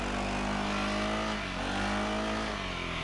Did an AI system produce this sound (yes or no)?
no